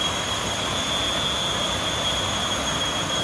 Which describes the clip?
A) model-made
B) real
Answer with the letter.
B